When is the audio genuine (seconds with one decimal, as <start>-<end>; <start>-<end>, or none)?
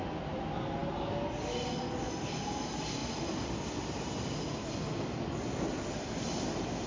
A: 0.0-6.9